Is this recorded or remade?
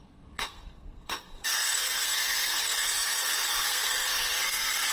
remade